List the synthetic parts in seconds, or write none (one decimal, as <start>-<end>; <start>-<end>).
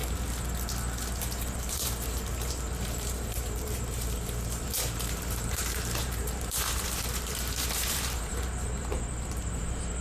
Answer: 1.2-10.0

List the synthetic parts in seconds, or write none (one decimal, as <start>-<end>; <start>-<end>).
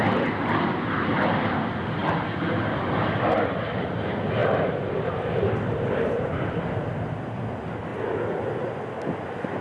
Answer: none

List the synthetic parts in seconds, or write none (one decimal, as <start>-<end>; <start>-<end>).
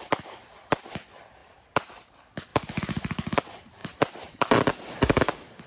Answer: 1.4-2.1; 2.5-3.4; 3.8-4.6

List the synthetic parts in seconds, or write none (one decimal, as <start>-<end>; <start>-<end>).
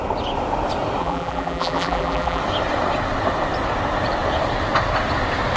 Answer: 1.0-2.4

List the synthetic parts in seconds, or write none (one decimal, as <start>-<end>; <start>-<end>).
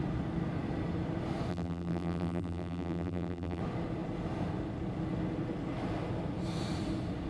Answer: 1.5-3.6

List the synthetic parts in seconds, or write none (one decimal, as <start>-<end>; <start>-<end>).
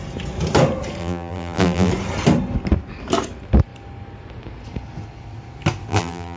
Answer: 1.0-1.9; 5.9-6.4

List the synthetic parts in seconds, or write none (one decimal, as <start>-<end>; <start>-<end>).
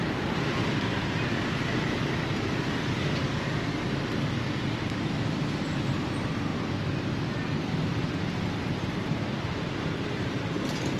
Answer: 0.0-1.7; 5.8-6.5; 8.6-11.0